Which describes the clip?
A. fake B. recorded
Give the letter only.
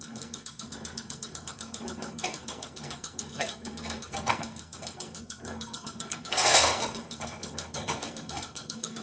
A